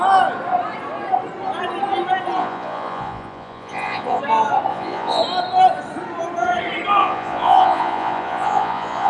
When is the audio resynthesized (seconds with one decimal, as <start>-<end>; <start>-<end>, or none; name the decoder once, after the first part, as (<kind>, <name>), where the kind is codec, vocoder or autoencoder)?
2.4-4.2 (vocoder, Vocos); 4.7-5.2; 7.0-9.1